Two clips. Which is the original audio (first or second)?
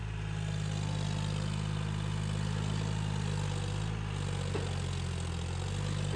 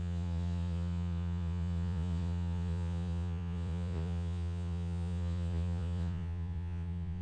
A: first